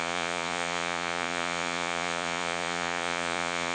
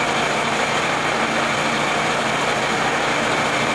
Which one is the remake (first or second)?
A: first